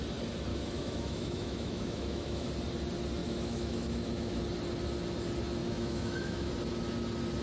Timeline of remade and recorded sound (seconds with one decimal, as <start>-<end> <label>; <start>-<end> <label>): 0.0-0.5 recorded; 0.5-2.5 remade; 2.5-3.2 recorded; 3.2-4.4 remade; 4.4-5.6 recorded; 5.6-6.5 remade; 6.5-7.4 recorded